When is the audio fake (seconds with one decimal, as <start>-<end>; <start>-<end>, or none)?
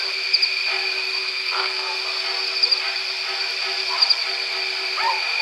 1.2-2.0